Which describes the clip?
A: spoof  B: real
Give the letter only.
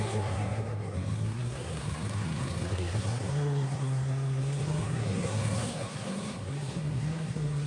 A